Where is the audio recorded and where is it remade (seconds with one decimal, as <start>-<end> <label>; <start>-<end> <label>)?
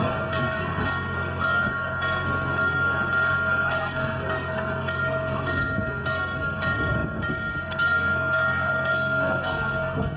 0.0-10.2 remade